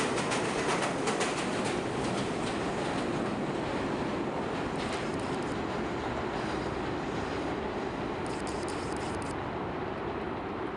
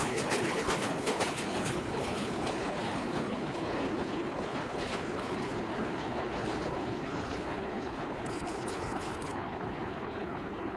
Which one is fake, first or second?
second